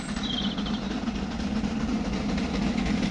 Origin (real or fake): fake